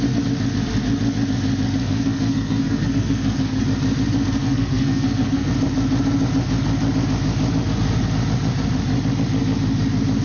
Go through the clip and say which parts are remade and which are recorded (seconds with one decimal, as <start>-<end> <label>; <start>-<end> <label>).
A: 0.0-1.8 recorded; 1.8-3.6 remade; 3.6-4.4 recorded; 4.4-5.5 remade; 5.5-10.2 recorded